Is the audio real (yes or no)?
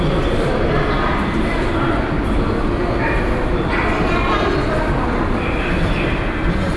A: yes